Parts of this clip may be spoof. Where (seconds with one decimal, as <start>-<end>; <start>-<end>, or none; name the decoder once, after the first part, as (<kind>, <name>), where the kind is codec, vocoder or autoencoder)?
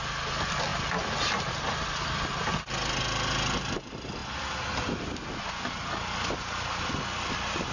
none